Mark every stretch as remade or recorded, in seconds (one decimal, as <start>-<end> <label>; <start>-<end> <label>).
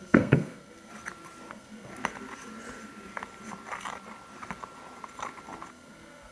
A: 0.0-0.9 remade; 0.9-1.5 recorded; 1.5-1.9 remade; 1.9-5.7 recorded; 5.7-6.3 remade